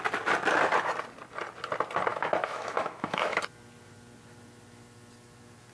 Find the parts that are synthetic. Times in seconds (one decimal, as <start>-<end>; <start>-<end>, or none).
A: 2.1-3.4